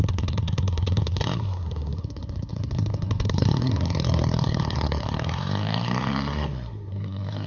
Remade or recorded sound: remade